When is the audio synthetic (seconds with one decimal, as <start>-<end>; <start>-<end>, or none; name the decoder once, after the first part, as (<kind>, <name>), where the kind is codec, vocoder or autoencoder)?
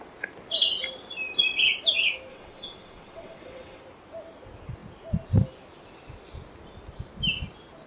2.3-3.8 (vocoder, WaveNeXt)